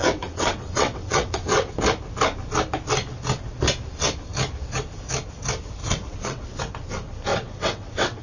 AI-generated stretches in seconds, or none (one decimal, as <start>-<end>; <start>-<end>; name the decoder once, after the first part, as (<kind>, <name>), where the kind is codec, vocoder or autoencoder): 0.0-1.7 (vocoder, WaveNeXt); 5.8-6.6; 7.3-8.2